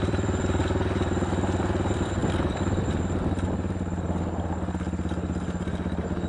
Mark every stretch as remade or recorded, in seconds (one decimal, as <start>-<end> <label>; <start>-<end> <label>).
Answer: 0.0-0.6 remade; 0.6-1.6 recorded; 1.6-2.2 remade; 2.2-6.3 recorded